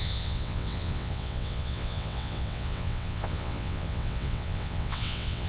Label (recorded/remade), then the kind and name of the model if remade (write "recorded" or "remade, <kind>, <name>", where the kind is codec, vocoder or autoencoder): remade, vocoder, WaveNeXt